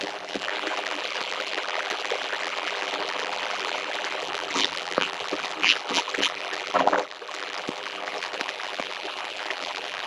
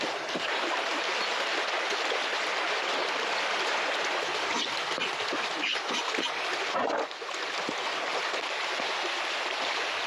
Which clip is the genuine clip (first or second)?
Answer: second